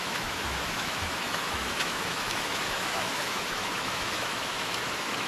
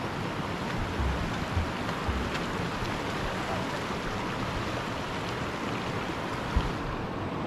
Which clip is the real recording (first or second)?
second